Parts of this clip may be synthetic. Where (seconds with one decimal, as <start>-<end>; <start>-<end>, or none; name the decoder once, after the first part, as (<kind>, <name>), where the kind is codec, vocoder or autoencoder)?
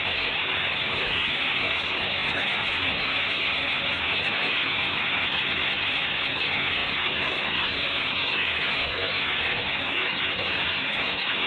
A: 0.0-11.5 (codec, SNAC)